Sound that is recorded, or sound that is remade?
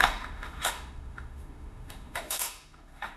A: remade